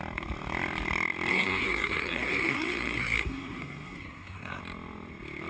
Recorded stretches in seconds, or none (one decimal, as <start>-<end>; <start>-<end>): 0.0-1.3; 4.6-5.5